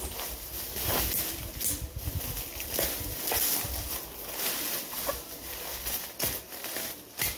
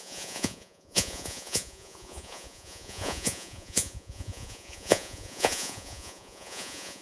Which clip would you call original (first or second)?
first